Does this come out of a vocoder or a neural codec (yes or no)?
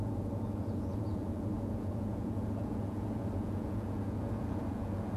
yes